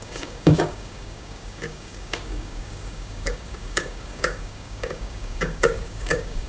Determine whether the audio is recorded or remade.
remade